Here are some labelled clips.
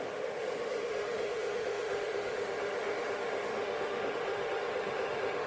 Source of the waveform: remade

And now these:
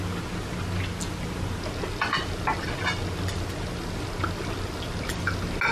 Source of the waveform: recorded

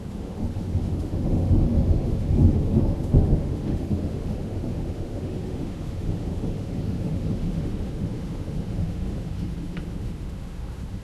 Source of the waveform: remade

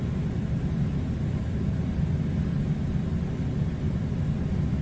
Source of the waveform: recorded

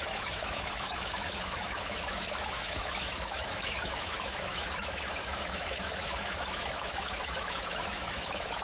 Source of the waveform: remade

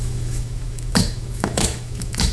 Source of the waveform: remade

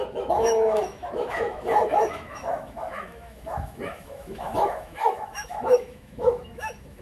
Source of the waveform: remade